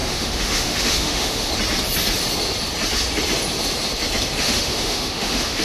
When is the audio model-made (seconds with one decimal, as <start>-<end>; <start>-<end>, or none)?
0.0-1.5; 4.4-5.6